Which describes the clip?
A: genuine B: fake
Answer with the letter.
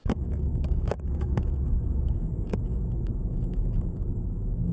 B